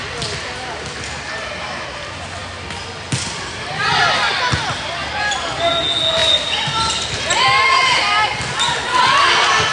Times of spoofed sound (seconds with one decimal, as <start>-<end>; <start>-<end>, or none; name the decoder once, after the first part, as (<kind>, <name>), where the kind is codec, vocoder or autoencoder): 6.2-7.4 (vocoder, BigVGAN v2)